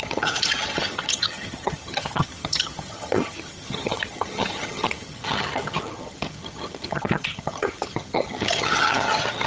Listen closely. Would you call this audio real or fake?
fake